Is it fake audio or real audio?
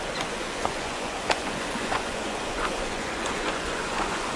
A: fake